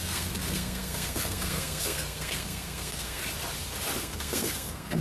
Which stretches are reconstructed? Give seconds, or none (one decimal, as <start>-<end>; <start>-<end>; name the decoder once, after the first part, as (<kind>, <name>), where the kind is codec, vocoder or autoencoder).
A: 0.0-3.2 (codec, SNAC); 4.0-5.0